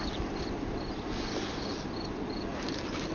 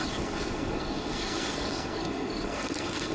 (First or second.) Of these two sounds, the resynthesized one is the second